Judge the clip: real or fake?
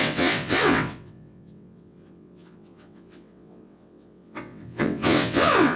fake